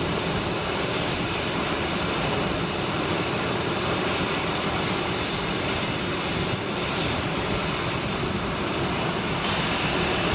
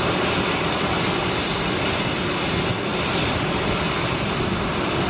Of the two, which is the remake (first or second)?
first